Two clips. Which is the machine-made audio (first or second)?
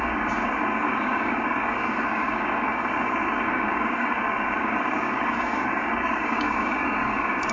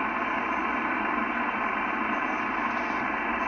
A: first